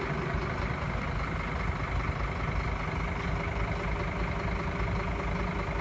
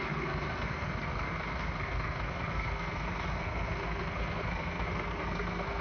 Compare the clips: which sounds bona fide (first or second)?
first